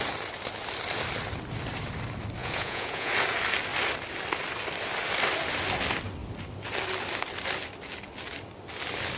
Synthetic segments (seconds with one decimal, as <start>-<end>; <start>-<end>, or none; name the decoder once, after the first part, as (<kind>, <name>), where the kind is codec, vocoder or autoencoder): 2.4-3.1 (vocoder, Vocos)